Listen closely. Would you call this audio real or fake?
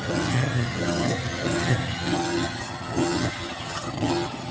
fake